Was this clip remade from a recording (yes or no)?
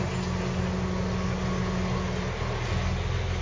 no